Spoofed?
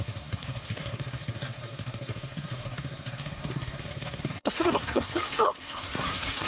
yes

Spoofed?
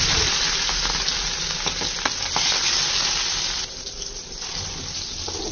no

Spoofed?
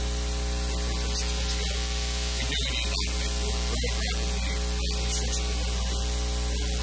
no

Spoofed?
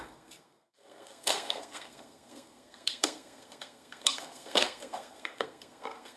yes